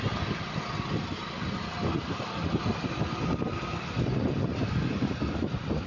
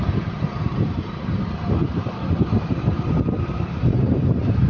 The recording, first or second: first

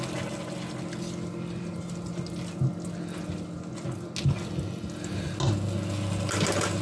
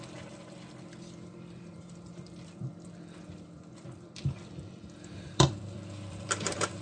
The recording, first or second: first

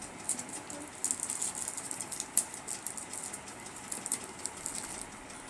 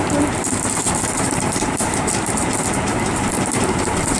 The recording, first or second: first